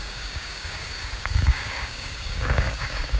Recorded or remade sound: remade